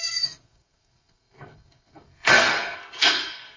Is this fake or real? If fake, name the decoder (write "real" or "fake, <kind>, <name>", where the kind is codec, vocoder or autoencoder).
fake, codec, SNAC